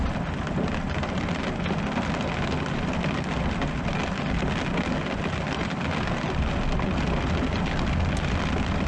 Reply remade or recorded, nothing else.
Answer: recorded